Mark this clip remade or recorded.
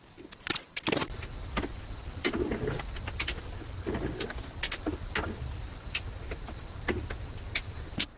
recorded